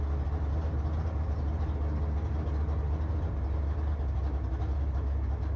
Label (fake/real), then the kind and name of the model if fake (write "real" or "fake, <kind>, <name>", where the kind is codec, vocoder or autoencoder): real